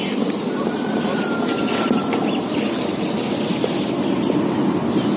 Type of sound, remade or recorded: recorded